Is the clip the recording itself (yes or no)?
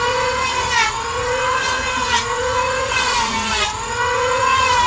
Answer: no